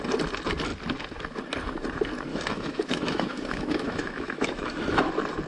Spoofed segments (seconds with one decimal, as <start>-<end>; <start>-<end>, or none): 2.3-5.1